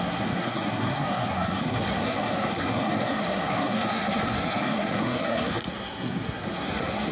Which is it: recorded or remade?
remade